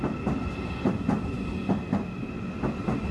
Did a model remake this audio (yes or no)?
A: no